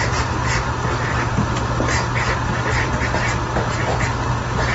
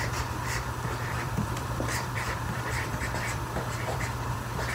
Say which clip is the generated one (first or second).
second